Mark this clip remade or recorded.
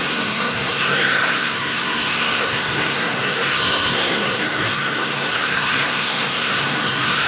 remade